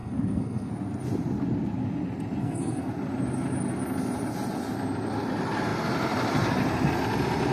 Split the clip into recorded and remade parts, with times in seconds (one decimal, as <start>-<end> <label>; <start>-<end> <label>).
0.0-0.7 remade; 0.7-2.4 recorded; 2.4-2.9 remade; 2.9-7.5 recorded